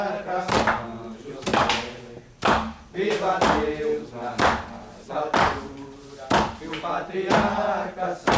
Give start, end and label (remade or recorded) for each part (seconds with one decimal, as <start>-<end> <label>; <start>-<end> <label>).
0.0-8.4 recorded